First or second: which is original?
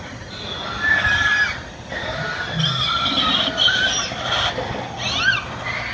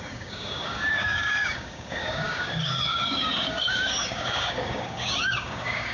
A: first